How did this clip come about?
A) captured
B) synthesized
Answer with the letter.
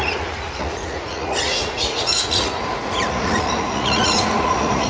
B